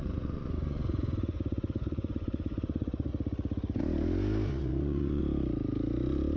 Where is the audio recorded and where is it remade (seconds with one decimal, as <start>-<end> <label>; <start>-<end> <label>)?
0.0-3.1 remade; 3.1-4.5 recorded; 4.5-5.2 remade; 5.2-6.4 recorded